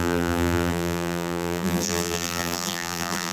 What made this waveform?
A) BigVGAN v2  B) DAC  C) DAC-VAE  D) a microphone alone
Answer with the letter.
A